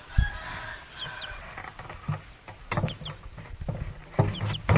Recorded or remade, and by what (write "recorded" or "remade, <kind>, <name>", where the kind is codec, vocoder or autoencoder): recorded